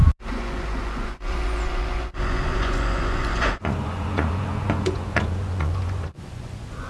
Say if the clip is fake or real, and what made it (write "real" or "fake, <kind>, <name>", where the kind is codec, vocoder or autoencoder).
fake, vocoder, Vocos